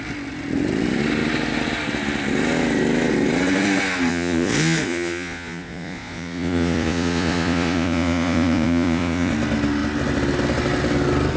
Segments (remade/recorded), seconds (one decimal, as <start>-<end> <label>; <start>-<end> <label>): 0.0-4.1 recorded; 4.1-9.3 remade; 9.3-11.4 recorded